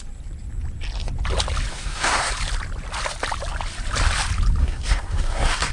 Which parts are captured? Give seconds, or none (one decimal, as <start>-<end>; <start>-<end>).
0.0-1.7; 2.3-4.6